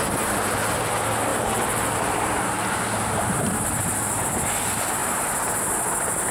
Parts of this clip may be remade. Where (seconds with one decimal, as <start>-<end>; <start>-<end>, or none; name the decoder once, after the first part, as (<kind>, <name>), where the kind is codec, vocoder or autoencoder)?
1.3-4.2 (vocoder, BigVGAN v2); 5.0-5.5